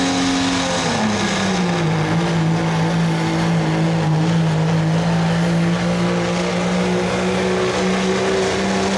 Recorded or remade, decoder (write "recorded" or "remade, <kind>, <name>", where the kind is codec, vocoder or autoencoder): recorded